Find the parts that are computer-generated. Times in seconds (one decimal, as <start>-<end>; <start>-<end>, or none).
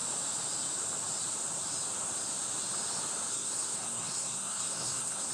3.3-5.3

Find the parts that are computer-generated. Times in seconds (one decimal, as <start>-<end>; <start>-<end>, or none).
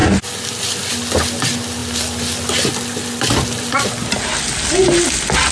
none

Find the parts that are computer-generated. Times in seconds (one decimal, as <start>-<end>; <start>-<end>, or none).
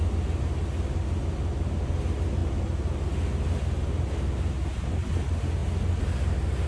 none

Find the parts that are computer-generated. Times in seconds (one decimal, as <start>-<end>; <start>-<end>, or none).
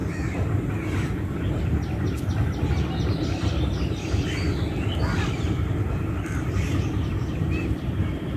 none